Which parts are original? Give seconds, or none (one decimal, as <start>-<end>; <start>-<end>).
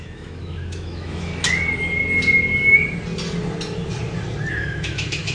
1.3-4.5